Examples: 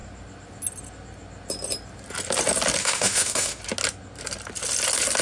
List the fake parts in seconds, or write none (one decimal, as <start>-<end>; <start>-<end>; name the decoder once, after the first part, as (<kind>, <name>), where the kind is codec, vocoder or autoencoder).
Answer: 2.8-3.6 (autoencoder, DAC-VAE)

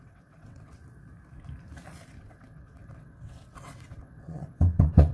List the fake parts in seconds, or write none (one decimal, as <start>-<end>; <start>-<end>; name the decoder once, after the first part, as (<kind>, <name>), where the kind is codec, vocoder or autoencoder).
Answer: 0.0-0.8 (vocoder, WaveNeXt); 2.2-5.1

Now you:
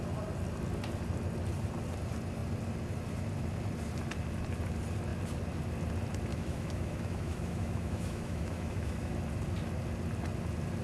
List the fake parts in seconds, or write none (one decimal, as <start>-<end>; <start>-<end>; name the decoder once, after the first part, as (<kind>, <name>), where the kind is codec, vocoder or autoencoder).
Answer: 6.3-9.1 (autoencoder, DAC-VAE)

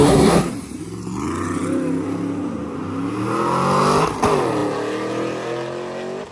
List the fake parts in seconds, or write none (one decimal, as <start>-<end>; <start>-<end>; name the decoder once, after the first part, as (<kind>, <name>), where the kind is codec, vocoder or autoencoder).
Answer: 0.0-0.5 (codec, SNAC)

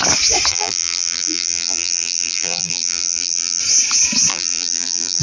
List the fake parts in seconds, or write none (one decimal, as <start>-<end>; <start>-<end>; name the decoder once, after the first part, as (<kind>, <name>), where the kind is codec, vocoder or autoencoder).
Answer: 0.5-3.6 (vocoder, BigVGAN v2); 4.3-5.2

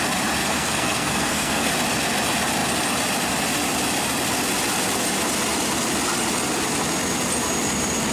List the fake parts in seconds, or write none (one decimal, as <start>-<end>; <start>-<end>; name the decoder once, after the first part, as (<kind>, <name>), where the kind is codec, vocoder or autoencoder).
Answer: 0.4-1.7 (codec, SNAC)